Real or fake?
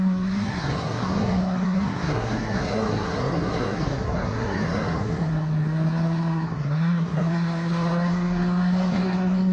fake